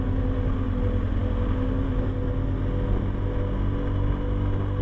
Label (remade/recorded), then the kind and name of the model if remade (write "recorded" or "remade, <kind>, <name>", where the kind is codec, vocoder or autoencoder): recorded